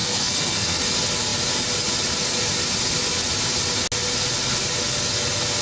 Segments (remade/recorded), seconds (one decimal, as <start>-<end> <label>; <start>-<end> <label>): 0.0-0.8 remade; 0.8-5.6 recorded